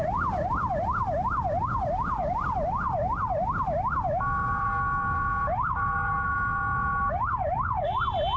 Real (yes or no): yes